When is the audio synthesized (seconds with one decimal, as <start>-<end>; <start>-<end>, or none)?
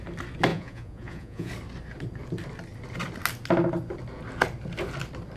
0.5-1.5